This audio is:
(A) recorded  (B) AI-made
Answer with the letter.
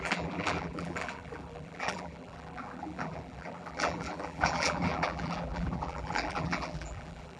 B